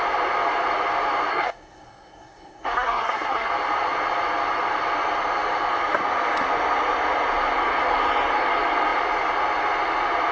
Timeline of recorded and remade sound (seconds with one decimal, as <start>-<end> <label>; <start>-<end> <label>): 0.0-1.3 recorded; 1.3-3.5 remade; 3.5-10.3 recorded